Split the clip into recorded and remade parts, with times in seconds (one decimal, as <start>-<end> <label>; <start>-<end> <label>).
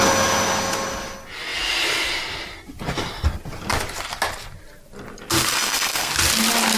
0.0-5.5 recorded; 5.5-6.1 remade; 6.1-6.8 recorded